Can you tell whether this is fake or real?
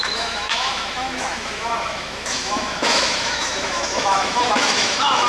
fake